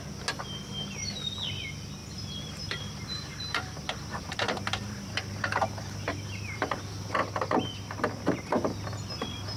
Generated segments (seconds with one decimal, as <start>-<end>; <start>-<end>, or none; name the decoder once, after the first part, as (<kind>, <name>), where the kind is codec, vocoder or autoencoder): 2.0-6.8 (vocoder, BigVGAN v2)